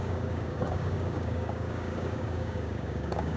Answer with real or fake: fake